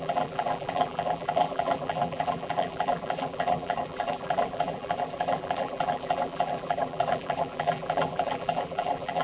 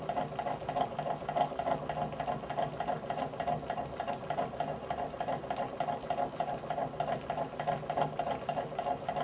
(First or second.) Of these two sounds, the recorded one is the second